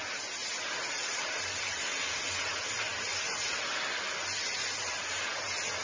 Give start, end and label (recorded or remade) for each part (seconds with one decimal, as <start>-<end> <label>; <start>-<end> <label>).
0.0-5.8 recorded

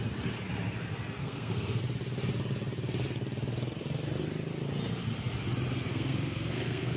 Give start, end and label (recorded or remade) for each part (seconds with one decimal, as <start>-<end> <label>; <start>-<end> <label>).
0.0-1.2 recorded; 1.2-1.8 remade; 1.8-5.9 recorded; 5.9-7.0 remade

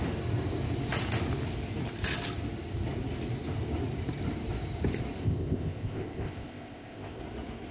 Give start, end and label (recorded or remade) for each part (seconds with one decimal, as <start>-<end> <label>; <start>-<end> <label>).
0.0-5.2 recorded; 5.2-7.2 remade; 7.2-7.7 recorded

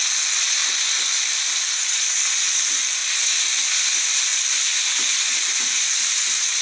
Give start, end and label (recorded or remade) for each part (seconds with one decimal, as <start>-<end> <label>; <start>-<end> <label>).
0.0-6.6 recorded